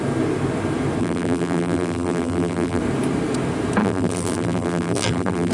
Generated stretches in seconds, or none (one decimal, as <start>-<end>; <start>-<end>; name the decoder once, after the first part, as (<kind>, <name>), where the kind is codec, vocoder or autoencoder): 1.0-2.8 (vocoder, BigVGAN v2); 3.8-5.5